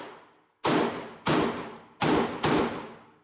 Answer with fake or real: real